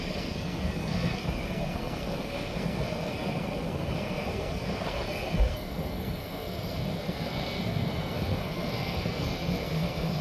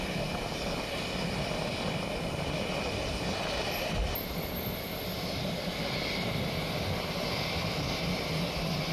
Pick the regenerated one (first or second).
first